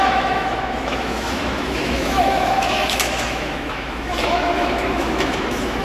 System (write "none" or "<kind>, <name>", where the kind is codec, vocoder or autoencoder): autoencoder, DAC-VAE